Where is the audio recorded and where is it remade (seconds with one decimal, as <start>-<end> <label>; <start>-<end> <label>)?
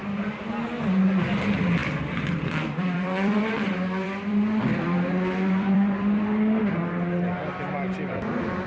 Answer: 0.0-1.8 recorded; 1.8-6.6 remade; 6.6-8.7 recorded